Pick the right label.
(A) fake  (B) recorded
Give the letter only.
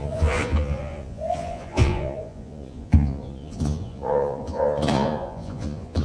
A